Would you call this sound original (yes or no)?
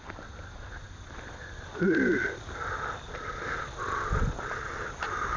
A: yes